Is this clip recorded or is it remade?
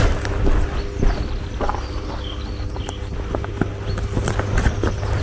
recorded